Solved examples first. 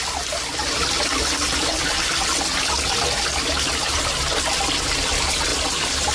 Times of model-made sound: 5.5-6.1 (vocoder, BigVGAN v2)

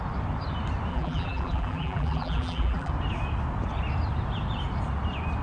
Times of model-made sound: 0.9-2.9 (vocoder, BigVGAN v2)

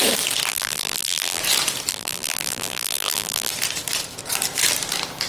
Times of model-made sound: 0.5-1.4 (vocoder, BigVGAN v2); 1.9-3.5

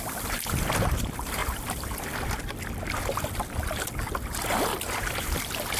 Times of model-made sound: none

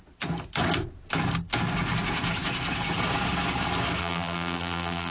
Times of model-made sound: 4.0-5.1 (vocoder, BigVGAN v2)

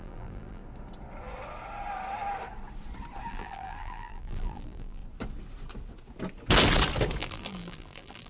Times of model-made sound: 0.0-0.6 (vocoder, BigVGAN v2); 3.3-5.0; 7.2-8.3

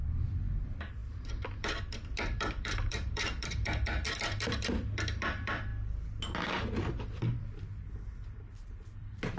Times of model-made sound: 0.0-5.7 (vocoder, BigVGAN v2); 8.3-9.4